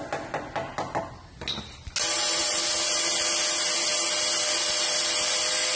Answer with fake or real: real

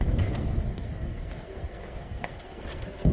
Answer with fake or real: fake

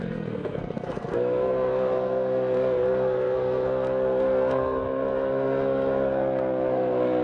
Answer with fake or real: fake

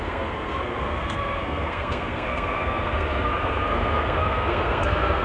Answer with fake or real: fake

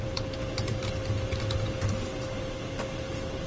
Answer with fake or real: real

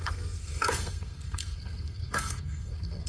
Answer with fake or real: fake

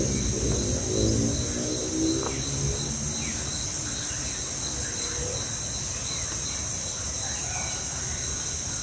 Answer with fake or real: real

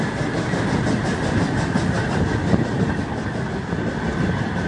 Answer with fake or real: real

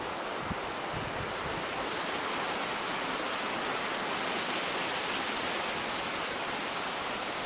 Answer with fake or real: real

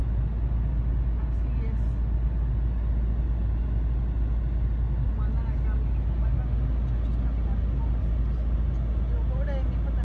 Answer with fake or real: real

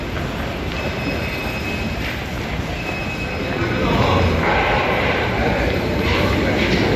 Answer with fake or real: real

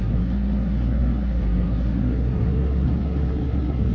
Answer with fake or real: fake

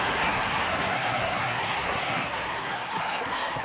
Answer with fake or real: fake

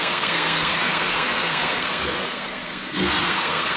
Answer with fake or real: fake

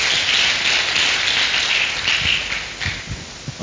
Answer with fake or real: real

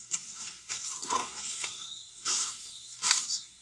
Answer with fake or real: fake